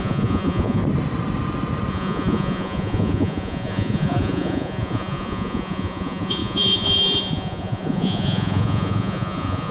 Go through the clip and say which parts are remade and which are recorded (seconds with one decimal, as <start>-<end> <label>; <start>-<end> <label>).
0.0-0.8 remade; 0.8-1.9 recorded; 1.9-9.7 remade